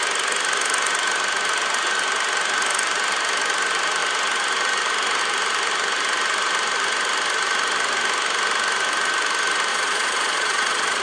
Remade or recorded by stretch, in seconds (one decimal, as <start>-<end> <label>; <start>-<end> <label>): 0.0-9.7 recorded; 9.7-11.0 remade

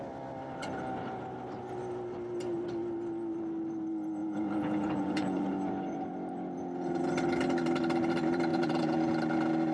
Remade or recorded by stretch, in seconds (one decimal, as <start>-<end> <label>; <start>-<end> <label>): 0.0-4.2 recorded; 4.2-5.5 remade; 5.5-8.5 recorded; 8.5-9.1 remade; 9.1-9.7 recorded

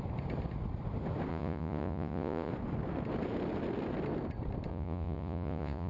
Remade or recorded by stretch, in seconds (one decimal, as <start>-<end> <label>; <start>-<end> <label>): 0.0-1.3 recorded; 1.3-2.5 remade; 2.5-4.7 recorded; 4.7-5.9 remade